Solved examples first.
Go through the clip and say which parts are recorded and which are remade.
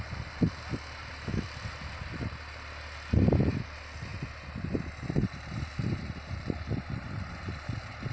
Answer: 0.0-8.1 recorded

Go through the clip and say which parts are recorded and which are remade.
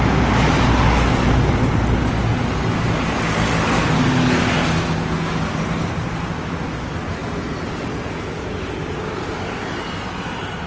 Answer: 0.0-7.2 recorded; 7.2-9.0 remade; 9.0-10.7 recorded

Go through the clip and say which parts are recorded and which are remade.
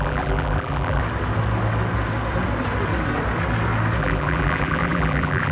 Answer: 0.0-1.0 remade; 1.0-4.0 recorded; 4.0-5.5 remade